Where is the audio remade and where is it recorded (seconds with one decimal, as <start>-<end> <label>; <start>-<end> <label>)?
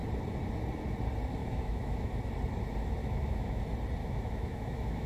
0.0-1.4 recorded; 1.4-2.2 remade; 2.2-3.0 recorded; 3.0-3.6 remade; 3.6-4.0 recorded; 4.0-5.1 remade